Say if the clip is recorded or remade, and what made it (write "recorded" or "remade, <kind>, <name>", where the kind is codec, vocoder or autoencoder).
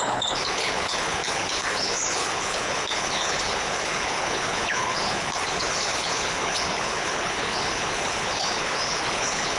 remade, codec, HILCodec